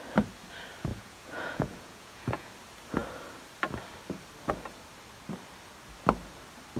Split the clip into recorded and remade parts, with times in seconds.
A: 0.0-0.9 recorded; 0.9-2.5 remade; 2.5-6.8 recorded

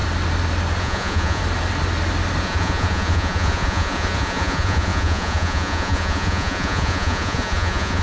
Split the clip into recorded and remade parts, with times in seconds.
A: 0.0-0.8 recorded; 0.8-1.4 remade; 1.4-2.4 recorded; 2.4-8.0 remade